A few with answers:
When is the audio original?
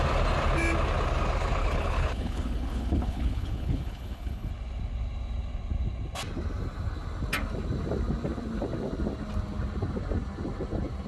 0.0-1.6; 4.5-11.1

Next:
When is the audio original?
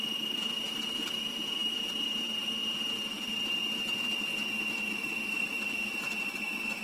0.0-6.8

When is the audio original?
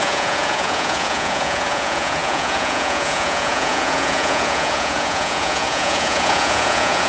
none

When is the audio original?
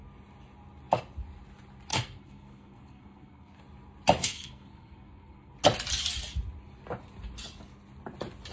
0.0-1.9; 3.6-4.2; 5.5-8.5